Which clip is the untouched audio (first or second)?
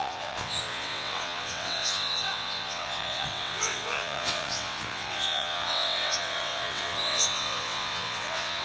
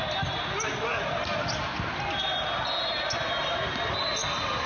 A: second